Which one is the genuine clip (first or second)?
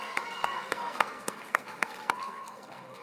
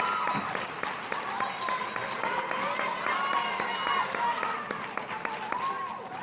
second